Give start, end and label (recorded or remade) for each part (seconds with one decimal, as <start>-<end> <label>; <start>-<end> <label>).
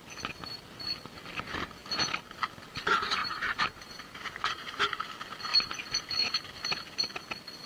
0.0-3.2 recorded; 3.2-5.1 remade; 5.1-7.7 recorded